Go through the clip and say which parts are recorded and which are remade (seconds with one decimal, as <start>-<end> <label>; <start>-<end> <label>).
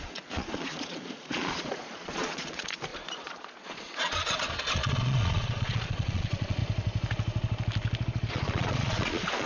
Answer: 0.0-6.6 remade; 6.6-8.3 recorded; 8.3-9.5 remade